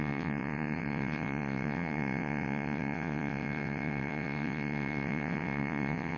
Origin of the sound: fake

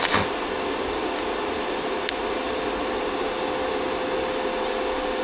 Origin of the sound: real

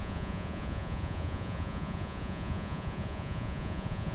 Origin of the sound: fake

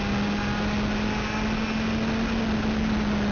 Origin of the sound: real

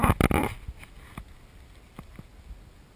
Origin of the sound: real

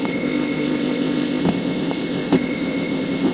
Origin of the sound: fake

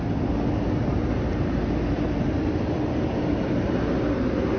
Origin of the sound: real